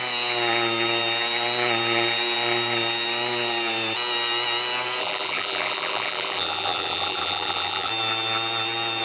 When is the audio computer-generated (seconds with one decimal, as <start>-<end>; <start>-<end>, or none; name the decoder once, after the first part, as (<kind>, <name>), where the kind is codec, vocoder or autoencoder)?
5.0-7.9 (vocoder, BigVGAN v2)